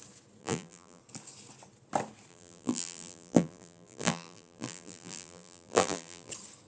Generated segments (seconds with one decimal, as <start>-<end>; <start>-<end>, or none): 0.4-1.0; 2.3-6.3